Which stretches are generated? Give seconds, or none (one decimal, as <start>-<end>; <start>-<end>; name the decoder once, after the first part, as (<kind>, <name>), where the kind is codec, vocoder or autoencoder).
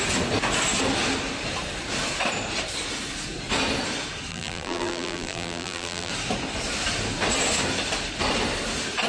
4.3-6.1 (vocoder, BigVGAN v2)